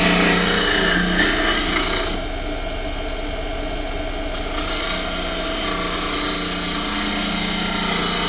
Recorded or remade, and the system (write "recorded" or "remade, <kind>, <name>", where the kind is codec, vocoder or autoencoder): recorded